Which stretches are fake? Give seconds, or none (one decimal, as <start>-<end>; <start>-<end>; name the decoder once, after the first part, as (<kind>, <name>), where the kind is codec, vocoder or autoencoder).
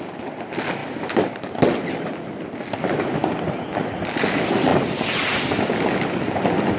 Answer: none